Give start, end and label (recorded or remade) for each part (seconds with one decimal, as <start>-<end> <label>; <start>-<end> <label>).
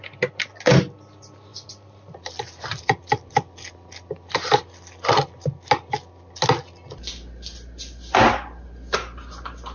0.0-1.5 recorded; 1.5-3.3 remade; 3.3-9.7 recorded